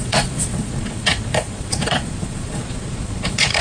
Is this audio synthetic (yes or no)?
yes